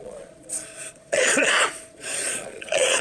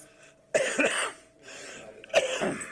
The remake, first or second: first